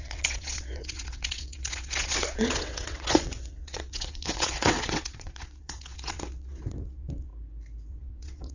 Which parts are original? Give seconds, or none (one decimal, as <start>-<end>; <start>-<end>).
7.3-7.9